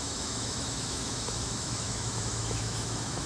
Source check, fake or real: fake